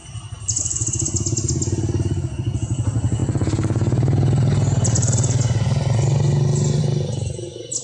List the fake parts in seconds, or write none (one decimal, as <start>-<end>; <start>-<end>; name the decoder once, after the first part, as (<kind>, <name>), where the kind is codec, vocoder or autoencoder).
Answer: none